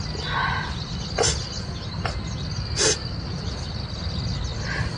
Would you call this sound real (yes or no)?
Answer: yes